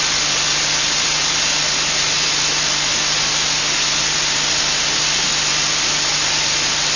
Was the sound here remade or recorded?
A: recorded